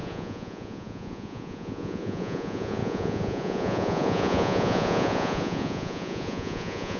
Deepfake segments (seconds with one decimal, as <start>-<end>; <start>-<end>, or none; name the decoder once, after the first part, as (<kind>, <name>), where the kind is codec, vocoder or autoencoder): 0.0-7.0 (vocoder, Vocos)